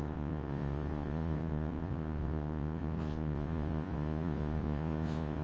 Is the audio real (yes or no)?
no